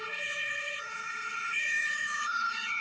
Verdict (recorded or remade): remade